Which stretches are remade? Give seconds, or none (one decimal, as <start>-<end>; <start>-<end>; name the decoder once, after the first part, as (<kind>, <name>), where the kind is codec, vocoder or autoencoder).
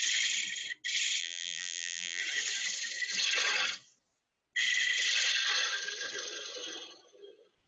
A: 1.2-2.2 (vocoder, BigVGAN v2)